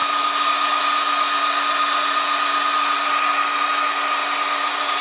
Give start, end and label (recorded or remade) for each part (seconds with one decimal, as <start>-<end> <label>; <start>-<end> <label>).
0.0-5.0 recorded